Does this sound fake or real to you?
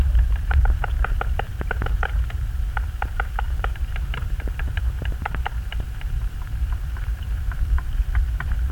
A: fake